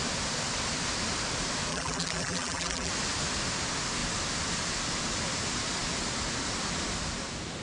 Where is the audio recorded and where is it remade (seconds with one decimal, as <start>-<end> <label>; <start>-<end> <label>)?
0.0-1.7 recorded; 1.7-2.9 remade; 2.9-7.6 recorded